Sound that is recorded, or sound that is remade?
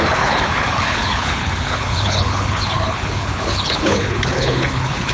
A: remade